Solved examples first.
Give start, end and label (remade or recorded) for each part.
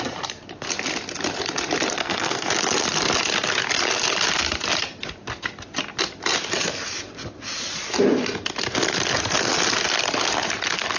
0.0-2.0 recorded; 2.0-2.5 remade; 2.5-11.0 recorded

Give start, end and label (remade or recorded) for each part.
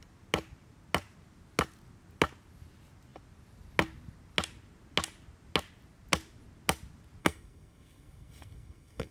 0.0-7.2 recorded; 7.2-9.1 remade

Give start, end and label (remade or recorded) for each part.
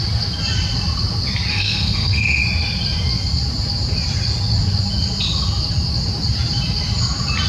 0.0-1.5 recorded; 1.5-2.4 remade; 2.4-7.5 recorded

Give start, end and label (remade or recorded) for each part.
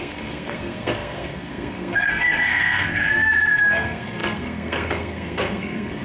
0.0-6.0 remade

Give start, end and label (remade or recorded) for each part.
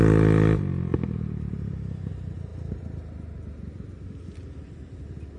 0.0-5.4 recorded